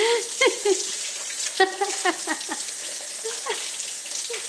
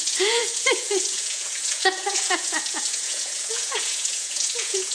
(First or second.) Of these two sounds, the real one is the first